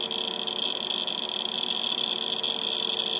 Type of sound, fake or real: real